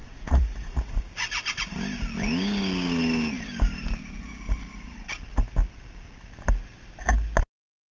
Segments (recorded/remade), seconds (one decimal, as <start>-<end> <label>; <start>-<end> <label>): 0.0-1.0 remade; 1.0-4.0 recorded; 4.0-5.1 remade; 5.1-7.9 recorded